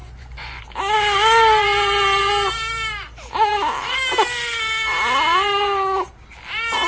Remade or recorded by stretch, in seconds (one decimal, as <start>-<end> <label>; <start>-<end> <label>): 0.0-0.6 remade; 0.6-6.9 recorded